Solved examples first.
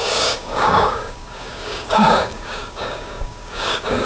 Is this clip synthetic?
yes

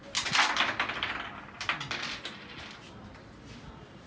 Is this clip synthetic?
no